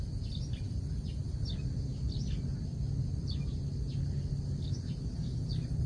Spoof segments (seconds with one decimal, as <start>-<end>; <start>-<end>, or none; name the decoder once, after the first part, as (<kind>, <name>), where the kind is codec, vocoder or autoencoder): none